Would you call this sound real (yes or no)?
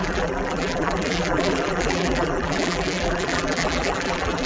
no